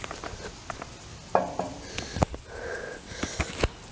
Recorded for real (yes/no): yes